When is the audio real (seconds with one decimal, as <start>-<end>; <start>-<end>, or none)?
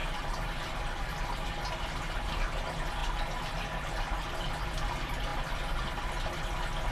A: 1.2-5.3; 6.4-6.9